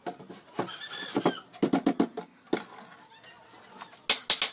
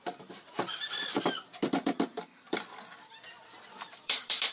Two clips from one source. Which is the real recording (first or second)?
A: first